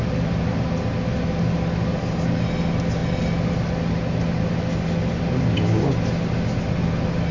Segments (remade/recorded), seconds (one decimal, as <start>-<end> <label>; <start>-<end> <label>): 0.0-7.3 recorded